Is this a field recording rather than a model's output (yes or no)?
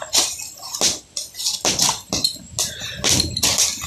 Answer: yes